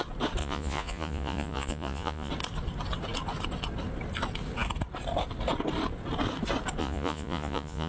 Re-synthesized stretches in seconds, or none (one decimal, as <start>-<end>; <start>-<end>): 0.4-2.3; 6.8-7.9